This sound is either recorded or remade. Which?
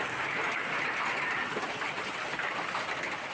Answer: recorded